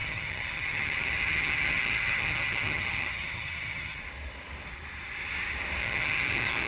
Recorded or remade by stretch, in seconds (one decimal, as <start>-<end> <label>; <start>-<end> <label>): 0.0-4.0 remade; 4.0-5.8 recorded; 5.8-6.7 remade